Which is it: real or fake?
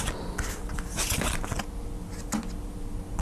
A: real